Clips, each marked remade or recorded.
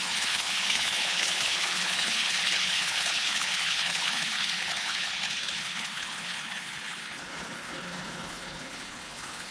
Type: remade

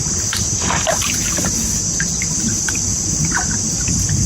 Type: recorded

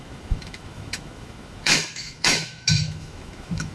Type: remade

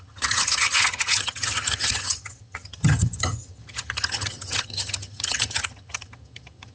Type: remade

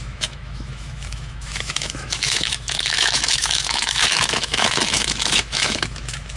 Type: remade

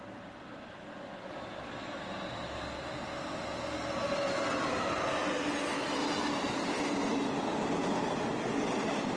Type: recorded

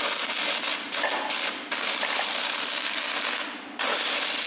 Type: recorded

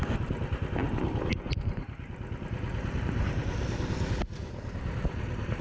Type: recorded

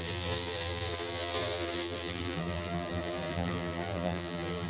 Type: remade